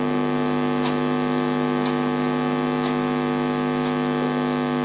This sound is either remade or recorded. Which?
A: recorded